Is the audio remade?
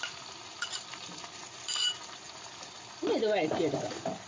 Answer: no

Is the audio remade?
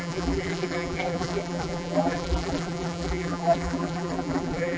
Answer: yes